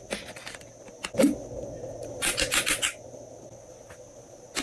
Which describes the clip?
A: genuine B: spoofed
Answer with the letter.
A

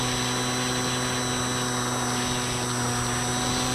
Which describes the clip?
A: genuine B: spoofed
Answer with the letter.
A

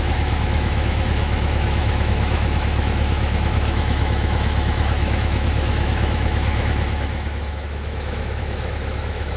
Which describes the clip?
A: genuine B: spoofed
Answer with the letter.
B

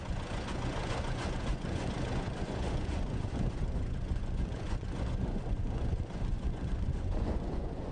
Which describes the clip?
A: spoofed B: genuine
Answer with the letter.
A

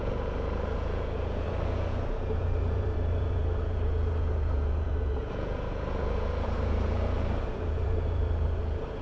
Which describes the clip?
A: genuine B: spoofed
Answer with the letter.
B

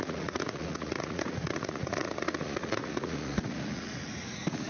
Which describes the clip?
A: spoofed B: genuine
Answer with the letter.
A